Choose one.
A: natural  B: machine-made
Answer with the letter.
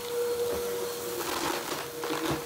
A